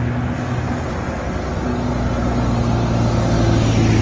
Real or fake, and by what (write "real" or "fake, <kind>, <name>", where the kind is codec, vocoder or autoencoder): real